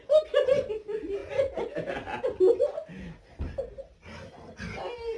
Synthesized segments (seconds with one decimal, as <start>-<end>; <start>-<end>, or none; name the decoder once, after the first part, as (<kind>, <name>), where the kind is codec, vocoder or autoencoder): none